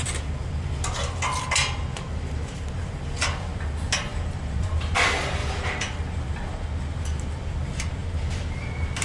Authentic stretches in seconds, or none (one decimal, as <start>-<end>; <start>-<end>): 0.0-1.6; 2.6-4.1; 4.9-5.4; 6.0-9.0